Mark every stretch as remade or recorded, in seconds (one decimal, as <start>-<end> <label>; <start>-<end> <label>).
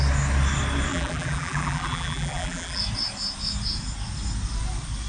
0.0-0.9 recorded; 0.9-2.8 remade; 2.8-5.1 recorded